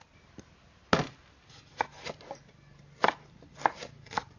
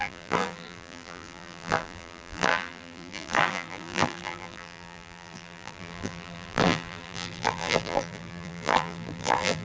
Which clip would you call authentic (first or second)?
first